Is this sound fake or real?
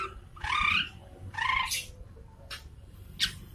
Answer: real